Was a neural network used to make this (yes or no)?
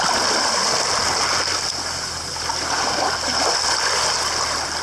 no